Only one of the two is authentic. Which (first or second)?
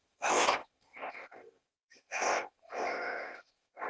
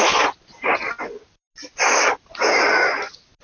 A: second